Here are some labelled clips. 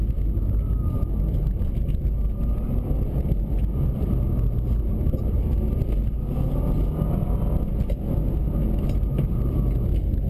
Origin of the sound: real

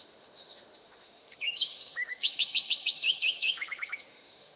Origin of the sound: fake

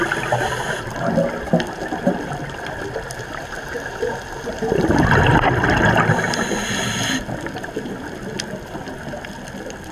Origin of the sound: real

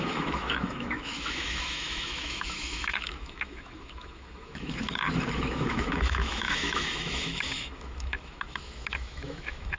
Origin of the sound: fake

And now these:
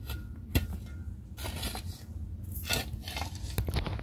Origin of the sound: real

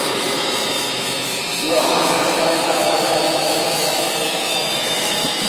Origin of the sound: fake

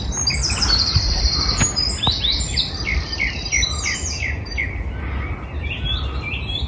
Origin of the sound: real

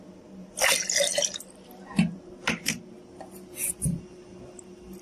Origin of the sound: real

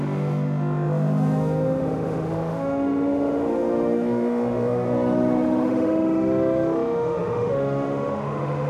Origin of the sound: fake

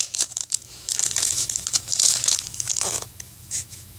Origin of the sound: fake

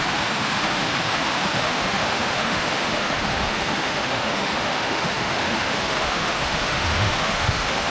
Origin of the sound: fake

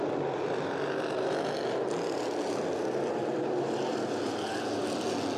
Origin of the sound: real